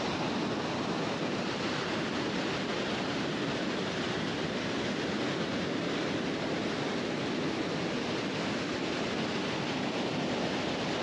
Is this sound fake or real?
real